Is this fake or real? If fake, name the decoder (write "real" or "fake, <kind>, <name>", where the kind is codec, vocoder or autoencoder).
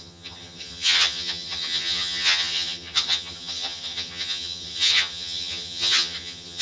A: fake, vocoder, HiFi-GAN